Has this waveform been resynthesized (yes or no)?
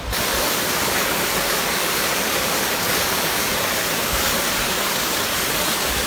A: yes